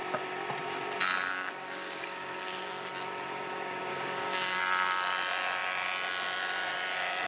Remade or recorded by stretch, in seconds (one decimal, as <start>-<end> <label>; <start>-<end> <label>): 0.0-1.3 recorded; 1.3-2.9 remade; 2.9-3.9 recorded; 3.9-4.6 remade; 4.6-7.3 recorded